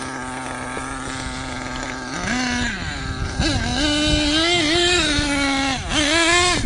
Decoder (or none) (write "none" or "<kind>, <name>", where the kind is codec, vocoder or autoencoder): none